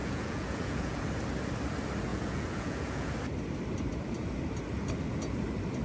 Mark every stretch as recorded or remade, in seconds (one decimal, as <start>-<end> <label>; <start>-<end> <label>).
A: 0.0-1.0 remade; 1.0-2.1 recorded; 2.1-3.1 remade; 3.1-5.8 recorded